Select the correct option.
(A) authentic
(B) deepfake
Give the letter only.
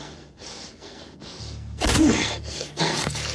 B